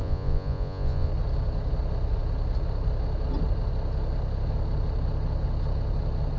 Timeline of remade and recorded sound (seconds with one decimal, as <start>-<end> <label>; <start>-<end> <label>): 0.0-1.1 remade; 1.1-6.4 recorded